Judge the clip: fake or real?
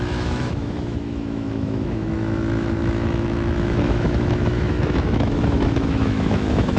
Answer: fake